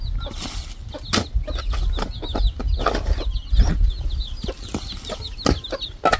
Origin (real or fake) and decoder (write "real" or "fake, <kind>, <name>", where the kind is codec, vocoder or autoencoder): real